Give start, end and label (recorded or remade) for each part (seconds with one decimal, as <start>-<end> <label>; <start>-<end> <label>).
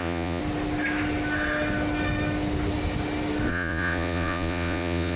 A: 0.0-0.4 remade; 0.4-3.5 recorded; 3.5-5.2 remade